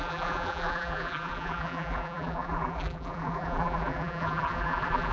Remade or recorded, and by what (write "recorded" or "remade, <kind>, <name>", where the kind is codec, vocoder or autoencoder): remade, vocoder, BigVGAN v2